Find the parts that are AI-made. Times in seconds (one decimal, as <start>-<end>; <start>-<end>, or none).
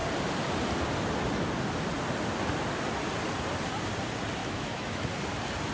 4.4-5.1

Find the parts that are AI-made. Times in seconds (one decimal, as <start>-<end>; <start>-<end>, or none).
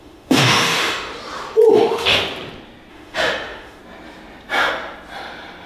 0.0-1.1; 1.7-2.2; 2.9-3.8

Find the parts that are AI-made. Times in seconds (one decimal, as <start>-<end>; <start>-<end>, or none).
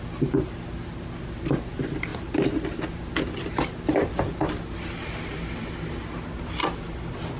none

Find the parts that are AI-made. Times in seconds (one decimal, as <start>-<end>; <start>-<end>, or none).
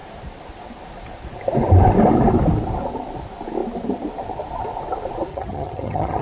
5.3-6.2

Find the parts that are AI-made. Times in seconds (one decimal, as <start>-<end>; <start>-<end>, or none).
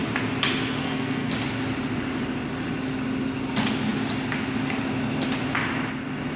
0.8-1.3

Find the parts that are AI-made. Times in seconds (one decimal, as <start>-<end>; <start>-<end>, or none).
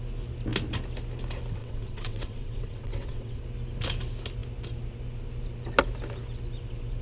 1.6-3.4